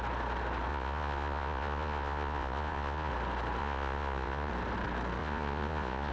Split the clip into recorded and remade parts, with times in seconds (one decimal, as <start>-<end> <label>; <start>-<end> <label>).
0.0-0.7 recorded; 0.7-3.1 remade; 3.1-3.6 recorded; 3.6-4.5 remade; 4.5-5.2 recorded; 5.2-6.1 remade